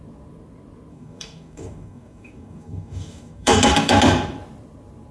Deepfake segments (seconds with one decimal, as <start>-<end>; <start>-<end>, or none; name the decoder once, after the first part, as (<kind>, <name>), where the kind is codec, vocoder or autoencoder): 0.9-4.0 (codec, DAC)

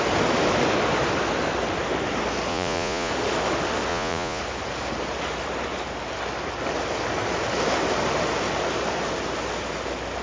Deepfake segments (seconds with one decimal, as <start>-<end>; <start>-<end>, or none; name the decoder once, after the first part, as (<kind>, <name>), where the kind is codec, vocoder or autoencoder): 2.5-3.1 (vocoder, Vocos); 3.9-4.4